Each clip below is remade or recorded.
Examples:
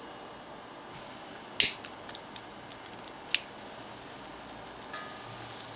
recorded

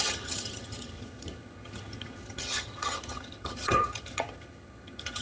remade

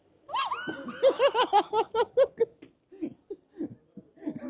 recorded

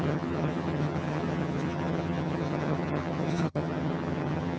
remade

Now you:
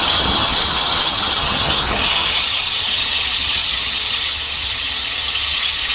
remade